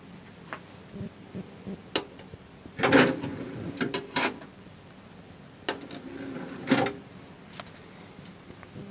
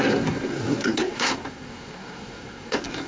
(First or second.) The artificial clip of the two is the second